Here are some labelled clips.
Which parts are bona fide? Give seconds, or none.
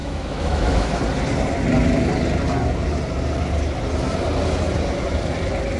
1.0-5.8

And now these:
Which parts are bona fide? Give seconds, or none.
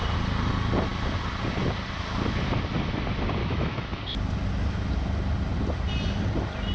0.0-3.4; 4.0-6.7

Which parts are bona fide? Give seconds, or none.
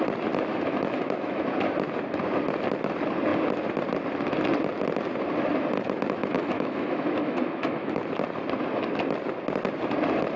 0.0-0.5; 1.4-6.2; 8.0-10.4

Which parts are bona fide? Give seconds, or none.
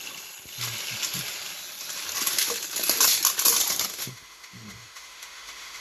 0.0-3.9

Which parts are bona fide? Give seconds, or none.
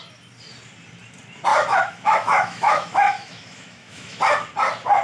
0.0-1.5; 4.2-5.0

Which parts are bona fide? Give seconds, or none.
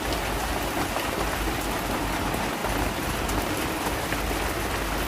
0.0-5.1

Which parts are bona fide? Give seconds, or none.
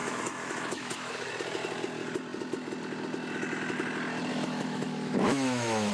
1.3-4.3